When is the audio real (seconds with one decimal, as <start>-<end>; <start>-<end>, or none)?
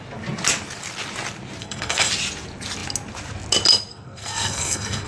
0.0-1.6; 2.1-3.9